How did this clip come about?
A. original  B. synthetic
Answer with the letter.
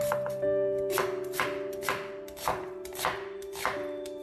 A